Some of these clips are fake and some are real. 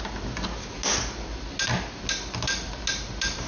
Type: real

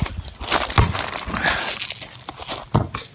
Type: real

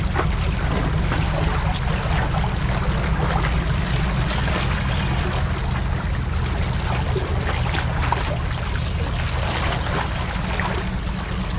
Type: real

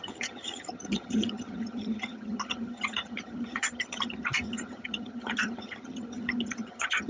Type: fake